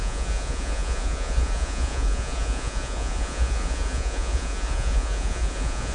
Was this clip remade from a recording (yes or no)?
yes